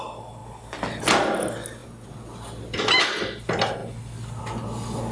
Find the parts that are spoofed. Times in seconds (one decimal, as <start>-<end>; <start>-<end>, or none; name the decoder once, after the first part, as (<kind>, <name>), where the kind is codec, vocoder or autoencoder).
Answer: none